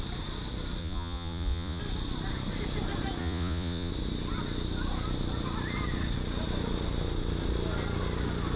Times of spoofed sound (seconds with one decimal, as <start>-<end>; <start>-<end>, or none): 0.8-1.8; 3.2-3.9